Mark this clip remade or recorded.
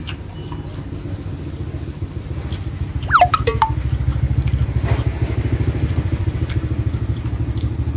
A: recorded